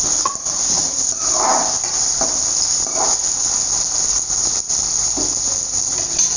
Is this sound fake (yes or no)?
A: no